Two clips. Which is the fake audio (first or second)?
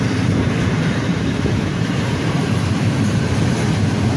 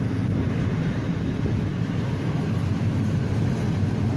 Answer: first